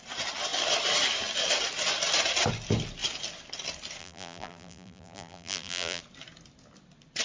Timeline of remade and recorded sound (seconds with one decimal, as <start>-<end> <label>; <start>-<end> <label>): 0.0-4.0 recorded; 4.0-6.0 remade; 6.0-7.2 recorded